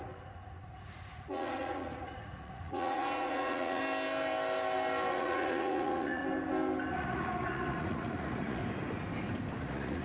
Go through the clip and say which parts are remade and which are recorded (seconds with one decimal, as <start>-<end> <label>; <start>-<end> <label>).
0.0-3.8 remade; 3.8-5.1 recorded; 5.1-6.2 remade; 6.2-6.9 recorded; 6.9-8.6 remade; 8.6-9.6 recorded; 9.6-10.0 remade